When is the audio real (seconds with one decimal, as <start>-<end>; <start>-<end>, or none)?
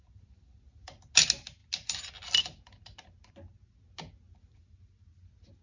0.0-5.6